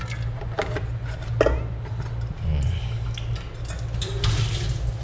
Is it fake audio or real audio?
real